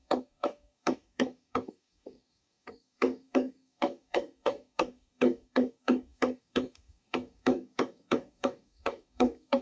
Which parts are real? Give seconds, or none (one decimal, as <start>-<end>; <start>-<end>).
none